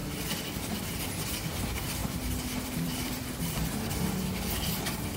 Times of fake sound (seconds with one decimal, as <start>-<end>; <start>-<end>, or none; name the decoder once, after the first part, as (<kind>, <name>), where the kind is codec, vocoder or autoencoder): 0.0-0.9 (vocoder, BigVGAN v2); 2.0-3.9

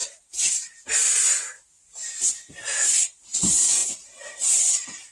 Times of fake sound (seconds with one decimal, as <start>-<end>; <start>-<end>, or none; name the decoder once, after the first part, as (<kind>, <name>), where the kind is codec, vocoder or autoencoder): 1.5-2.0 (vocoder, BigVGAN v2); 2.5-5.1